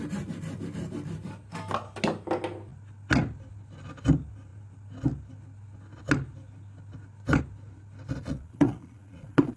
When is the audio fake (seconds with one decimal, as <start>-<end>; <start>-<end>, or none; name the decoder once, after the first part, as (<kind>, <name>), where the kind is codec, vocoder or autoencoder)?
8.2-9.6 (vocoder, Vocos)